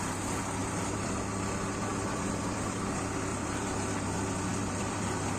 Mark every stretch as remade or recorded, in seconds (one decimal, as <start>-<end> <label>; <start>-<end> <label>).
0.0-0.6 recorded; 0.6-1.2 remade; 1.2-1.9 recorded; 1.9-2.8 remade; 2.8-3.3 recorded; 3.3-4.0 remade; 4.0-4.5 recorded; 4.5-5.4 remade